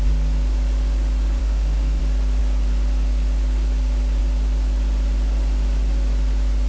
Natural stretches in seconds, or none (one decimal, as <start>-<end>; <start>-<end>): 0.0-1.4; 2.0-6.7

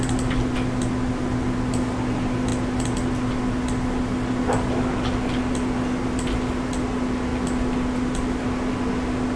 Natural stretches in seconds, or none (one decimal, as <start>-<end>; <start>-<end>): 0.0-9.4

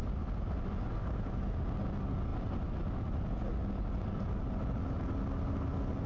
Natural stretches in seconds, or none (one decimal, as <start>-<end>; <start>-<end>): 0.0-1.0; 1.5-6.1

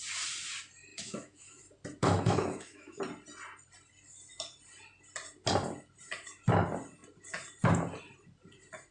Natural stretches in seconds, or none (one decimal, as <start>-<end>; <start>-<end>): 0.0-0.9; 1.6-2.0; 3.0-8.9

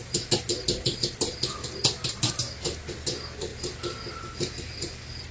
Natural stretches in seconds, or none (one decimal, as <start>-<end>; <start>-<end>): 0.0-5.3

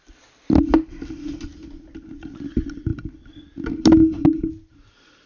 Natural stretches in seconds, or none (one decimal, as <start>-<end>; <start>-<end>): 0.0-5.3